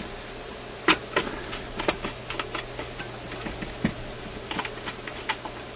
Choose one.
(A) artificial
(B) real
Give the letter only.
B